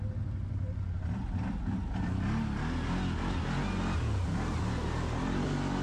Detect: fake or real real